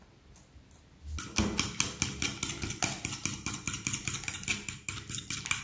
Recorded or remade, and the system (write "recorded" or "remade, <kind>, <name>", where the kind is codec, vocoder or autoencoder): recorded